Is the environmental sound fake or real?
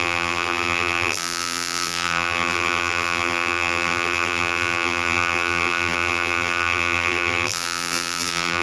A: fake